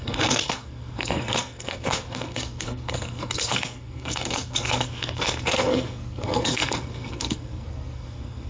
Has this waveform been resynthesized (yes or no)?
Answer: yes